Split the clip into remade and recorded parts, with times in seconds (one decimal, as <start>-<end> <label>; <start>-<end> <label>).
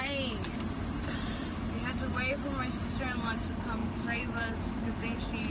0.0-5.5 recorded